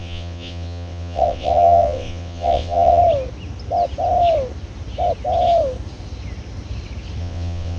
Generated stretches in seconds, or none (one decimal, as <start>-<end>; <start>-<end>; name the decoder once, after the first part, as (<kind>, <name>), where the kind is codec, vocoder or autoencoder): 0.0-3.0 (vocoder, WaveNeXt); 7.2-7.8